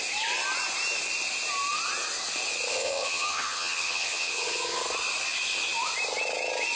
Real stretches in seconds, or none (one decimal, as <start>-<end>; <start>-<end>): 0.0-2.7; 4.8-6.8